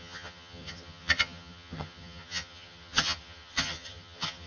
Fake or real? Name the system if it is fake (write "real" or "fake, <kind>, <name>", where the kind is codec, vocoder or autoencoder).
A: fake, vocoder, HiFi-GAN